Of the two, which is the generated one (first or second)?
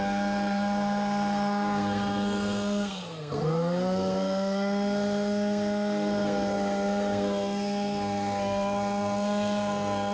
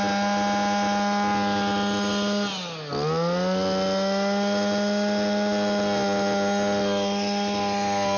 first